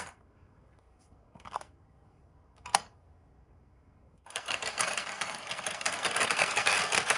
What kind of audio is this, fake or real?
fake